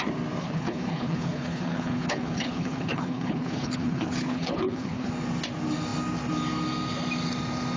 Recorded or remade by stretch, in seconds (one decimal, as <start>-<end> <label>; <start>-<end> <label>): 0.0-0.4 recorded; 0.4-5.1 remade; 5.1-7.8 recorded